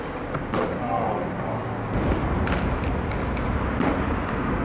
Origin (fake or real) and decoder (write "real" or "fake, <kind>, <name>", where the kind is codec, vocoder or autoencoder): real